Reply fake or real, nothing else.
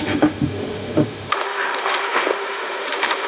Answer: fake